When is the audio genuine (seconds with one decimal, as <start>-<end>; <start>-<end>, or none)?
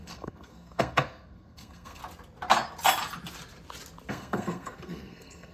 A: 2.0-4.1